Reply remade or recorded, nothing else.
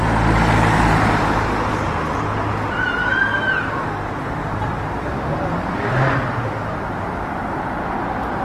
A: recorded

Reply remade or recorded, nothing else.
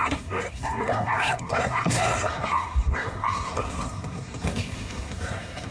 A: remade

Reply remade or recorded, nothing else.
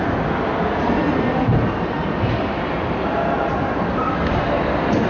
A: recorded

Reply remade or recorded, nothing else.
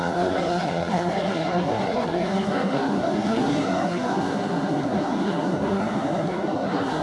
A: remade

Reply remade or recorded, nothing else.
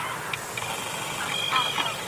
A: recorded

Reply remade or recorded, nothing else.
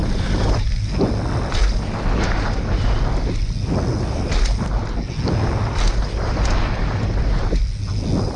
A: recorded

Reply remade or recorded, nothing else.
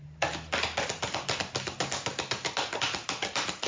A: recorded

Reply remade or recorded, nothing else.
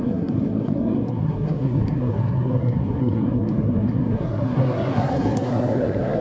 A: remade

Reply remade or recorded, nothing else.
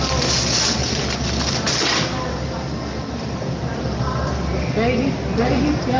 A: recorded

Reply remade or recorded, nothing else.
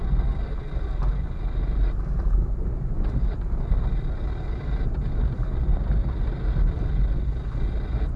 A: recorded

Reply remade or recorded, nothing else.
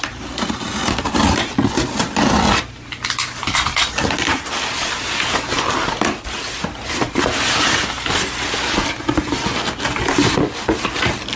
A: recorded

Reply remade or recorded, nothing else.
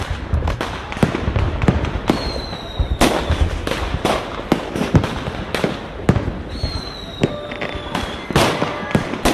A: recorded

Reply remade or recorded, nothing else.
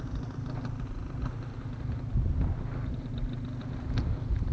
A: recorded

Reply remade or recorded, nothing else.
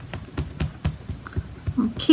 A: recorded